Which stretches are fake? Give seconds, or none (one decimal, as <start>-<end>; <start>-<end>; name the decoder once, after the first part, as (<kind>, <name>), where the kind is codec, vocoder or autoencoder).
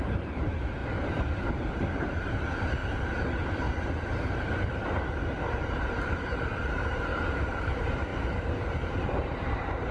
0.0-0.8 (vocoder, BigVGAN v2); 1.5-2.8; 5.4-9.9